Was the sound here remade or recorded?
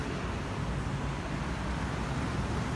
recorded